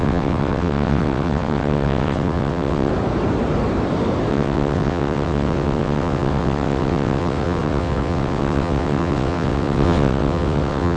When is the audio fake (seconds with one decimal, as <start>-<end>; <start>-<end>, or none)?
0.0-2.9; 4.3-11.0